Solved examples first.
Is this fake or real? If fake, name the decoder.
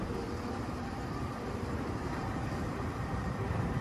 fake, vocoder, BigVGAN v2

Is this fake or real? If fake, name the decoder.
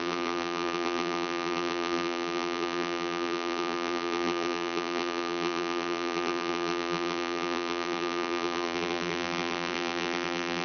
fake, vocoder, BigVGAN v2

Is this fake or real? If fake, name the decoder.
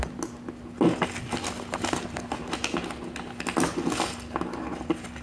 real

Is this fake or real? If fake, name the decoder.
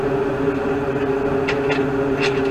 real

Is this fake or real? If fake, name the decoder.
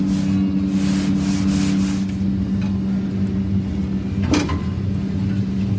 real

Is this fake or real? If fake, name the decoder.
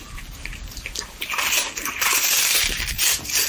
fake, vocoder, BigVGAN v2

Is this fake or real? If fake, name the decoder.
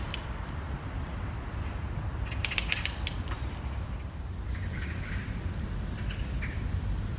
fake, vocoder, BigVGAN v2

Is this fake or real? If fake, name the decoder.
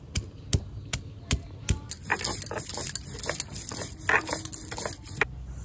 real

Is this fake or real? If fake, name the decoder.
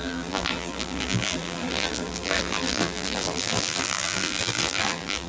fake, vocoder, BigVGAN v2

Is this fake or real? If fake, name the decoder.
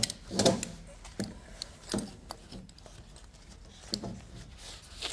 real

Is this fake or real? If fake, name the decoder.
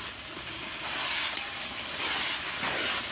real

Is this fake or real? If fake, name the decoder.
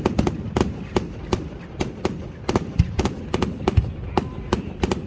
fake, vocoder, BigVGAN v2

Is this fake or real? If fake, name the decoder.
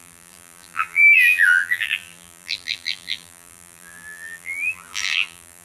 fake, vocoder, BigVGAN v2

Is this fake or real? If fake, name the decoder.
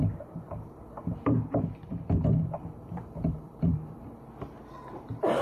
fake, vocoder, BigVGAN v2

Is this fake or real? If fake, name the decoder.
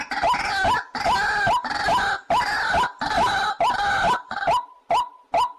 real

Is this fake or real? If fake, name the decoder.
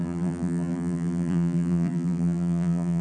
fake, vocoder, BigVGAN v2